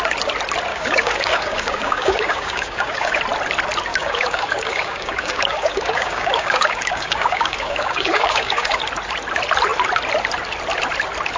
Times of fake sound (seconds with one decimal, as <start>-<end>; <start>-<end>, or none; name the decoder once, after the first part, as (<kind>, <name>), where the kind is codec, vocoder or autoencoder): 0.7-3.2 (codec, DAC); 3.9-8.8